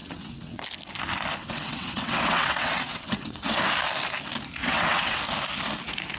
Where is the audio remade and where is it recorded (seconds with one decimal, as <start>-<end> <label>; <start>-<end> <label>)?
0.0-0.6 remade; 0.6-1.4 recorded; 1.4-3.4 remade; 3.4-4.6 recorded; 4.6-5.2 remade; 5.2-6.2 recorded